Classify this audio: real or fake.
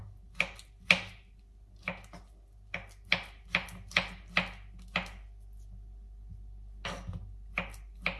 real